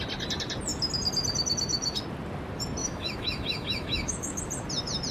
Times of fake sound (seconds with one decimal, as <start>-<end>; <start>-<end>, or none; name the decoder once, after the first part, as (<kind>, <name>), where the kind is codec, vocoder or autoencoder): 2.8-4.4 (autoencoder, DAC-VAE)